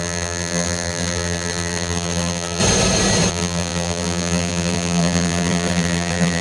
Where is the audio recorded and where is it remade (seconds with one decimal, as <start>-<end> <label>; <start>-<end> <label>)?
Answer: 0.0-2.6 remade; 2.6-3.3 recorded; 3.3-6.4 remade

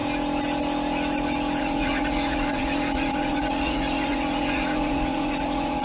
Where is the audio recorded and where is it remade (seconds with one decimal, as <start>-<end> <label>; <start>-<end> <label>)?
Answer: 0.0-1.6 recorded; 1.6-5.8 remade

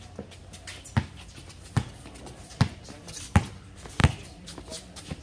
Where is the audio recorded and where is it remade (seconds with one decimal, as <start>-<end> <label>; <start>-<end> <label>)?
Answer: 0.0-5.2 recorded